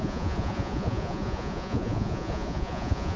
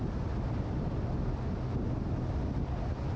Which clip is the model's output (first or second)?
first